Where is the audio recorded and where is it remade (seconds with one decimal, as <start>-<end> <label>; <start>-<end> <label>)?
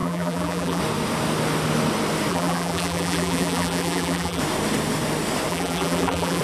0.0-0.8 remade; 0.8-2.3 recorded; 2.3-4.4 remade; 4.4-5.5 recorded; 5.5-6.4 remade